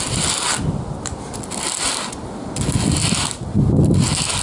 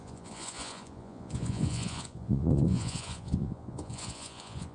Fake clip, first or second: second